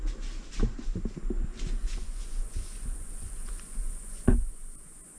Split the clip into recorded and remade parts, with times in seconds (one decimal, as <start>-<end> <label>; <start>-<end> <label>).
0.0-1.8 recorded; 1.8-5.2 remade